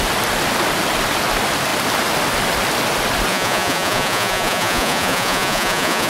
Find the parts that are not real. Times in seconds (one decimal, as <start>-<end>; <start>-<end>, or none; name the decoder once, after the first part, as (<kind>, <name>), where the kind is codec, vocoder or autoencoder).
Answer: 3.3-6.1 (vocoder, Vocos)